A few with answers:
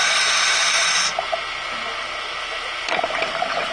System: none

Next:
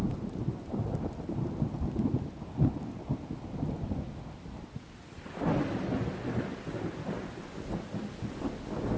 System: none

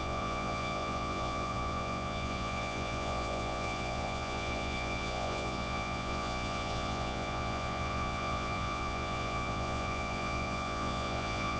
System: vocoder, Vocos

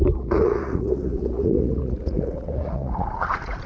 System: vocoder, Vocos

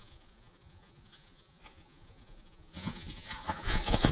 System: vocoder, Vocos